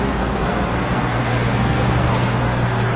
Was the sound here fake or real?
fake